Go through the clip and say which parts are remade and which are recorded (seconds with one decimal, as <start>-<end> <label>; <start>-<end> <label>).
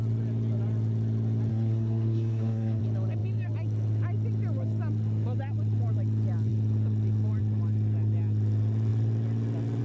0.0-1.5 recorded; 1.5-2.8 remade; 2.8-9.8 recorded